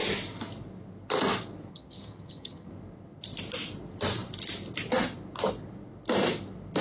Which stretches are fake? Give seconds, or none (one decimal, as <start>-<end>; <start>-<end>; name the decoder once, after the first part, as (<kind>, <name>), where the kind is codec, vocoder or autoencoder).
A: 1.7-2.7 (vocoder, HiFi-GAN)